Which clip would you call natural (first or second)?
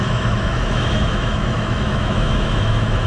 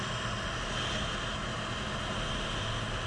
second